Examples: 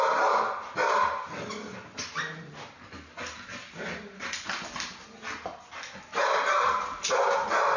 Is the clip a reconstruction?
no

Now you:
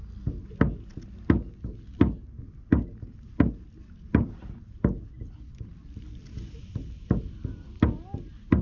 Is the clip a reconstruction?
no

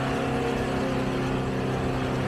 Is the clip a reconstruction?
no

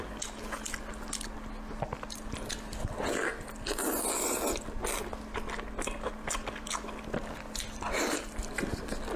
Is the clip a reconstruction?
no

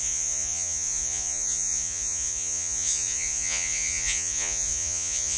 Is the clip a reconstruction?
yes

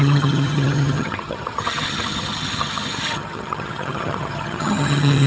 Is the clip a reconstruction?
yes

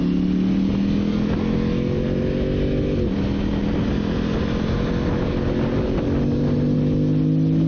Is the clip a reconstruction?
no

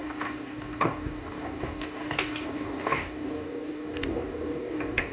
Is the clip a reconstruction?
yes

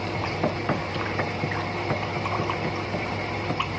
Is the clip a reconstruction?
yes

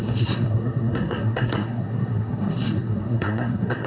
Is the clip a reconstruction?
yes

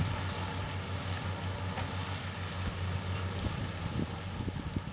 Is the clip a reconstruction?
no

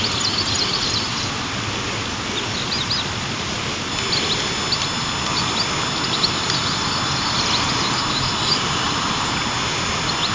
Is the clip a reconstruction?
no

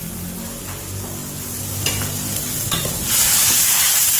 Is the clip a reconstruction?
no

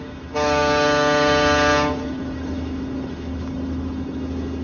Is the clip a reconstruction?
yes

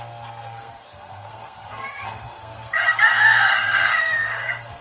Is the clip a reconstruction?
yes